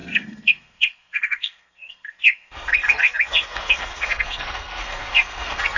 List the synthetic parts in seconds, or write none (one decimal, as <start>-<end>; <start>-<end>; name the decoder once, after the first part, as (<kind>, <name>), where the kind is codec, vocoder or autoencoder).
0.0-5.8 (codec, SNAC)

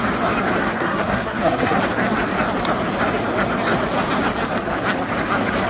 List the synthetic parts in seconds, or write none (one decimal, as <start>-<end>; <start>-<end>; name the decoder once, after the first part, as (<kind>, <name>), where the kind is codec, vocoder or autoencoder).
0.6-1.8 (codec, SNAC)